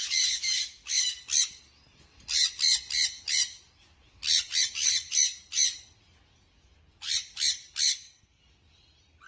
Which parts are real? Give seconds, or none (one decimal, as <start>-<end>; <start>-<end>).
0.0-7.9; 8.4-9.3